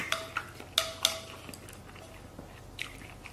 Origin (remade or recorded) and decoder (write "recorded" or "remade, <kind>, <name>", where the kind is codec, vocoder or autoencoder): recorded